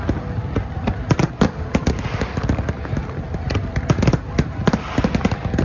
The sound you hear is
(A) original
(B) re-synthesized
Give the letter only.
A